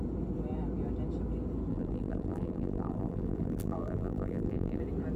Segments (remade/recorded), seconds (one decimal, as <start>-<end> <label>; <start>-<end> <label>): 0.0-1.7 recorded; 1.7-4.8 remade; 4.8-5.2 recorded